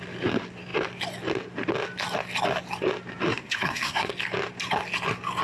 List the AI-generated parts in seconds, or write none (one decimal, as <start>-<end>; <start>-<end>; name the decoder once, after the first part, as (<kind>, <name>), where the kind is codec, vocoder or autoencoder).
3.3-4.1 (codec, SNAC)